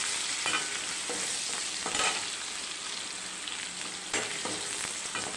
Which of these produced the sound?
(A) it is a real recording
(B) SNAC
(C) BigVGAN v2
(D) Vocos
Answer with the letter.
A